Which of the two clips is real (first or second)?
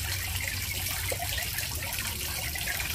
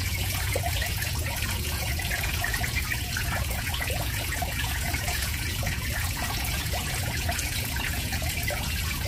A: first